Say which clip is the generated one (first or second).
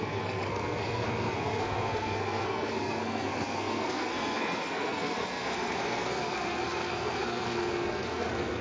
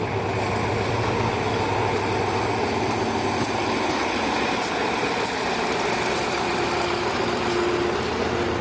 first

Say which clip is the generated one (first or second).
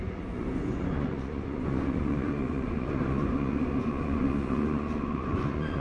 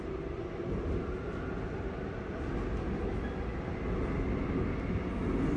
first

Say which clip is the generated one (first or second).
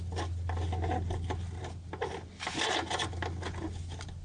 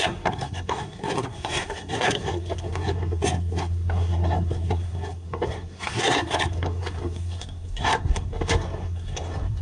second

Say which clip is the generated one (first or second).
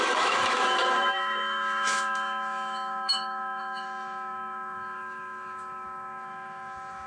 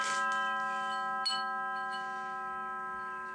first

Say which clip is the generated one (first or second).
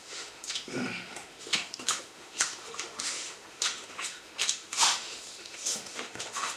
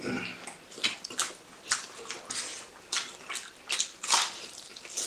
first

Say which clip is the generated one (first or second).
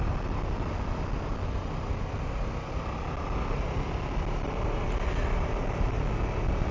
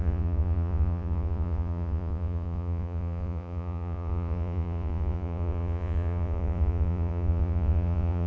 second